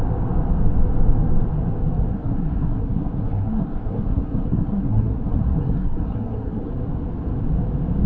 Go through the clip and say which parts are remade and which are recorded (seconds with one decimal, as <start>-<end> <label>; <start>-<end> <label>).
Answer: 0.0-2.1 recorded; 2.1-6.7 remade; 6.7-8.1 recorded